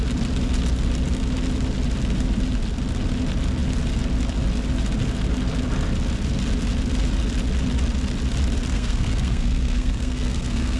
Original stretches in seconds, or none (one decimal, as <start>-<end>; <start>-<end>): 0.0-8.7